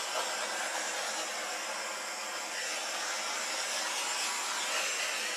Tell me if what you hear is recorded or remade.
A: recorded